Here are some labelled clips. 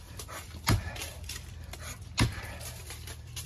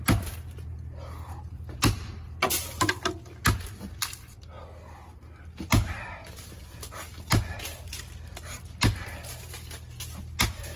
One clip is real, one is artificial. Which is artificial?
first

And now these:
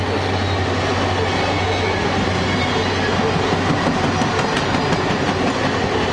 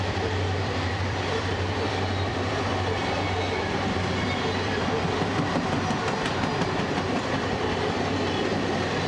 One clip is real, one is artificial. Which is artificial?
second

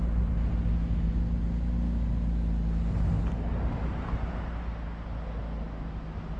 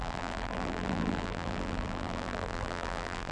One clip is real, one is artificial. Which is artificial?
second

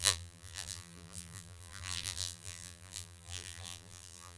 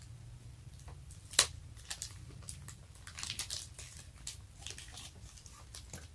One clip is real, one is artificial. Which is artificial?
first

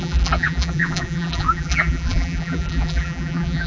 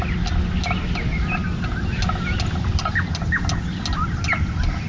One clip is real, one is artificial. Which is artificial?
first